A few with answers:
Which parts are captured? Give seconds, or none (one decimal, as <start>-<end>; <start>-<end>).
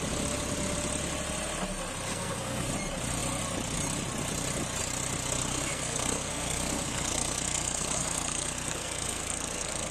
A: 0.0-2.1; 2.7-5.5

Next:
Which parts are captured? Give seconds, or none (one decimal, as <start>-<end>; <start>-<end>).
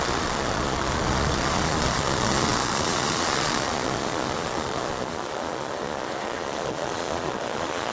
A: none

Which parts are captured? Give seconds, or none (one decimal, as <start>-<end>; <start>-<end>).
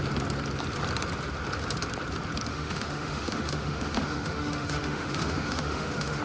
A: 0.0-2.5